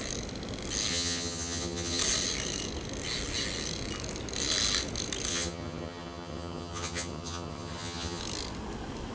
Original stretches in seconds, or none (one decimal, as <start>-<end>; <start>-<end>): 0.0-0.9; 2.0-5.3; 8.2-9.1